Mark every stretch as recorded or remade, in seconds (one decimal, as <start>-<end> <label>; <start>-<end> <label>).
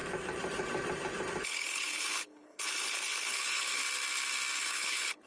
0.0-1.4 recorded; 1.4-3.8 remade; 3.8-4.6 recorded; 4.6-5.3 remade